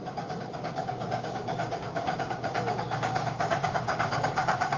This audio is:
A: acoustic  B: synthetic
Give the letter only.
B